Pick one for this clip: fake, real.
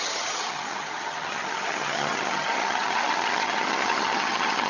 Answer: fake